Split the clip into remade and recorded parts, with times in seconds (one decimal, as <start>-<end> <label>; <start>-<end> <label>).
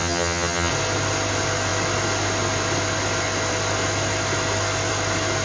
0.0-0.7 remade; 0.7-5.4 recorded